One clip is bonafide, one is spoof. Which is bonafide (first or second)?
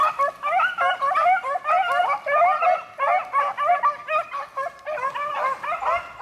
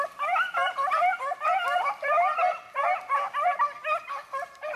first